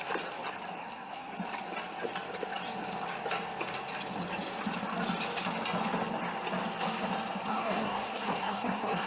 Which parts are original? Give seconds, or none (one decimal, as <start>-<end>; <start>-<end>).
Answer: 0.0-0.8; 1.3-7.5